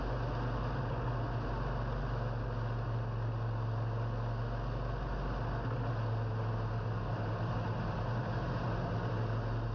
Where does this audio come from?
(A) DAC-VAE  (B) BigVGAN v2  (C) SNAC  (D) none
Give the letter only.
D